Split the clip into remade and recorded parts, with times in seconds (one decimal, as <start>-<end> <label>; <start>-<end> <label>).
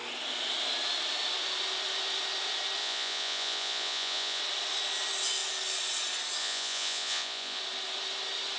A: 0.0-2.8 recorded; 2.8-4.4 remade; 4.4-6.4 recorded; 6.4-7.6 remade; 7.6-8.6 recorded